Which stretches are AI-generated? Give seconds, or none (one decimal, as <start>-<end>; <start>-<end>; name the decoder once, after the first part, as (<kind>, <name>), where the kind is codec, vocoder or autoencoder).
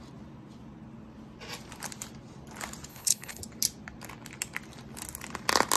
2.9-3.4 (codec, HILCodec)